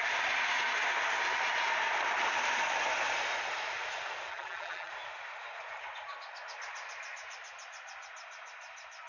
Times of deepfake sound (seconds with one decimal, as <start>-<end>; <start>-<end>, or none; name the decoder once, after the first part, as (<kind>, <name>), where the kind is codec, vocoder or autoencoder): 4.3-4.9 (vocoder, BigVGAN v2)

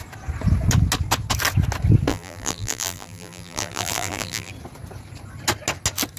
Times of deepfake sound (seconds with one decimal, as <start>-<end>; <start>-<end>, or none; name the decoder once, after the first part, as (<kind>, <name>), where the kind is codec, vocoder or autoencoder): 2.1-4.5 (vocoder, BigVGAN v2)

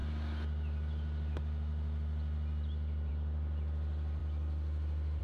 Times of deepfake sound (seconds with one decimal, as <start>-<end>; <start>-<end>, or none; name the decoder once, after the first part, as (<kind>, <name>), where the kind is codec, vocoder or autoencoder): none

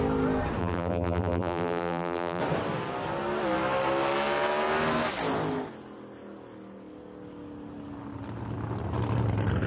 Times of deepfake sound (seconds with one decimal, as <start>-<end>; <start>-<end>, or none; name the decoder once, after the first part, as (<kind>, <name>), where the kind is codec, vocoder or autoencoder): 0.6-2.4 (vocoder, BigVGAN v2)

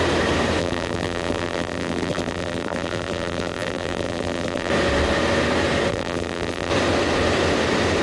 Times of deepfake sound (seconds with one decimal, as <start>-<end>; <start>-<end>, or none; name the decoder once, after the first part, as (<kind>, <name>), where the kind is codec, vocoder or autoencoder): 0.6-4.7 (vocoder, BigVGAN v2); 5.9-6.7

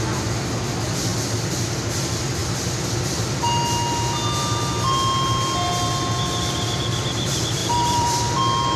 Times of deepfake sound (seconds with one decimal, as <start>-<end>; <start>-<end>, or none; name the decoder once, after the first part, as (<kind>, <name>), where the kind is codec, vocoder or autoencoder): 1.1-2.0 (vocoder, BigVGAN v2); 7.6-8.2

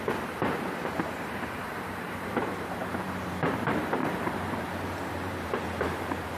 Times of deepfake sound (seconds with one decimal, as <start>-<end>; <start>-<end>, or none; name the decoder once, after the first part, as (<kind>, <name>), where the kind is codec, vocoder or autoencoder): 0.0-6.4 (vocoder, BigVGAN v2)

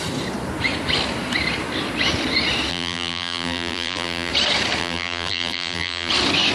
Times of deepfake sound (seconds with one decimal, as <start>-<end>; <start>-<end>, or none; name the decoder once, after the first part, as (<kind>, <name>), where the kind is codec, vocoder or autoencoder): 2.7-4.3 (vocoder, BigVGAN v2); 4.8-6.1